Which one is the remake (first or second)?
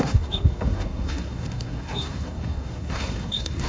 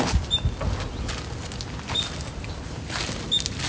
first